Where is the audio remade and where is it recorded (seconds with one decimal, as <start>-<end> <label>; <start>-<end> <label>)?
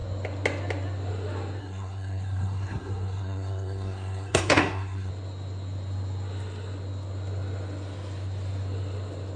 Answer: 0.0-1.6 recorded; 1.6-5.1 remade; 5.1-9.4 recorded